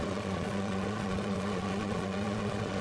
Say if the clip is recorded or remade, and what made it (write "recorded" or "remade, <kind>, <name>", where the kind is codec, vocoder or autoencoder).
remade, vocoder, Vocos